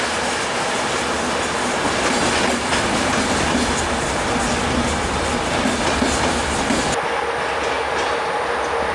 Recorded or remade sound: recorded